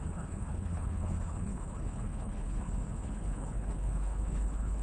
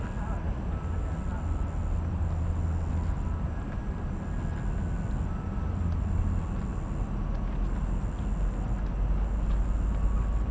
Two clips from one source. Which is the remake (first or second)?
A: first